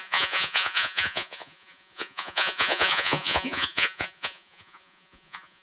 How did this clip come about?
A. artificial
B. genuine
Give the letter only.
A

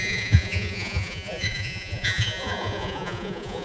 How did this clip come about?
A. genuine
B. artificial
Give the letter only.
B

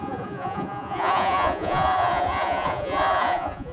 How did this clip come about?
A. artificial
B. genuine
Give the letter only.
A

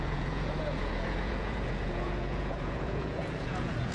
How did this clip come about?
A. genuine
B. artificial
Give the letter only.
B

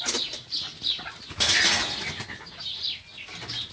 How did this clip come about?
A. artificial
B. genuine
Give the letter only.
B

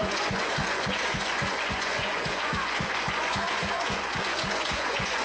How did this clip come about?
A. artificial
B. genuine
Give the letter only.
A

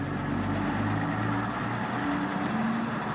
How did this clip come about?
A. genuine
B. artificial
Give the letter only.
A